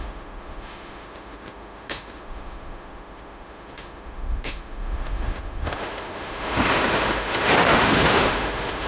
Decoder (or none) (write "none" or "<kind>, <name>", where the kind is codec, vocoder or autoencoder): autoencoder, DAC-VAE